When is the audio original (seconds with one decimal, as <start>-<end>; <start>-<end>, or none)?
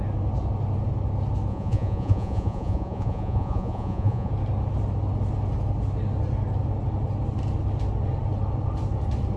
0.0-1.5; 4.3-9.4